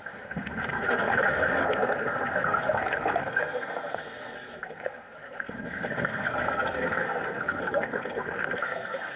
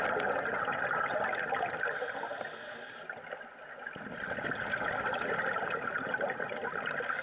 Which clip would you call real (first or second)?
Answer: second